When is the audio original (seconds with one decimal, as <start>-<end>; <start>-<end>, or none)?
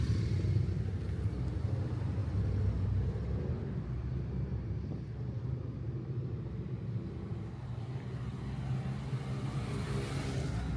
0.0-10.8